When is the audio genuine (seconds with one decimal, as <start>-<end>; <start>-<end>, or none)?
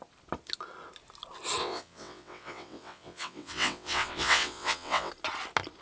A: 0.0-1.6; 5.1-5.8